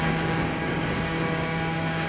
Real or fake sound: fake